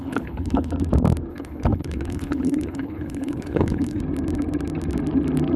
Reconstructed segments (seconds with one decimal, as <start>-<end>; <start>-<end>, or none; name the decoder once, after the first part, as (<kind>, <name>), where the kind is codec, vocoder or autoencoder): 0.0-0.7 (codec, HILCodec); 1.3-4.0